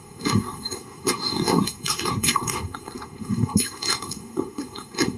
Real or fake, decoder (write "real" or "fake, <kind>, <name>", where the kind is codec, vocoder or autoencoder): fake, codec, SNAC